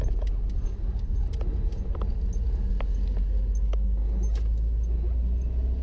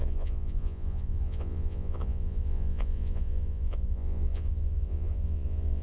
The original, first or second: first